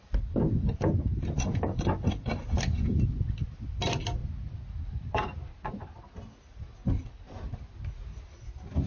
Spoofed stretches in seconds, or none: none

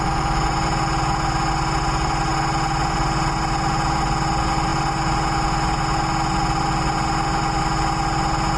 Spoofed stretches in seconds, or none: none

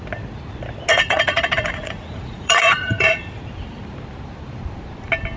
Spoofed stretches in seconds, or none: 0.9-3.4 (vocoder, Vocos)

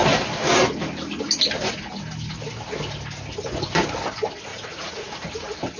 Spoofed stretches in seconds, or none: 4.5-5.1 (vocoder, Vocos)

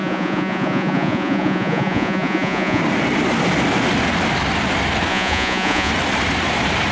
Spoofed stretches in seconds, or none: 0.0-2.8 (vocoder, Vocos); 5.1-5.9

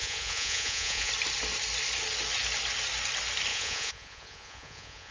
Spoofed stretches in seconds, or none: 0.0-1.1 (vocoder, Vocos); 3.5-5.1